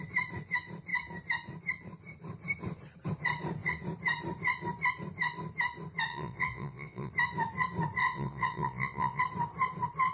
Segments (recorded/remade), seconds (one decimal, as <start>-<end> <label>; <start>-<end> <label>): 0.0-6.1 recorded; 6.1-7.1 remade; 7.1-8.0 recorded; 8.0-9.2 remade; 9.2-10.1 recorded